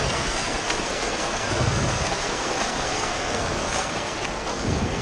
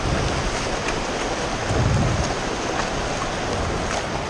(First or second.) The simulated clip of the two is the first